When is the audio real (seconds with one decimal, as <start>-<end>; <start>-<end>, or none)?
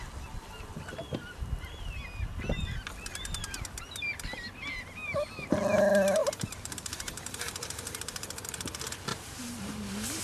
0.0-6.2; 8.4-9.1